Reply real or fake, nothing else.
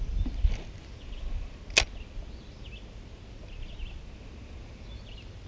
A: real